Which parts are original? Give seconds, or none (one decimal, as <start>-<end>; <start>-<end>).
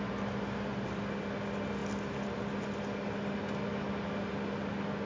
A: 0.0-5.1